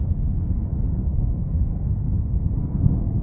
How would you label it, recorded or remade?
remade